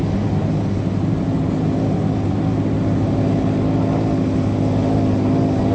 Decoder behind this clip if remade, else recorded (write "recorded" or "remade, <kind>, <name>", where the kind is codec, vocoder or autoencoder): recorded